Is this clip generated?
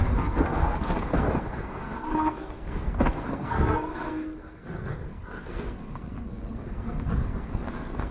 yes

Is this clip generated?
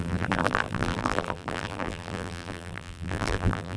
yes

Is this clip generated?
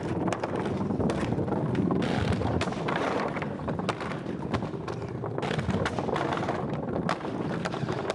no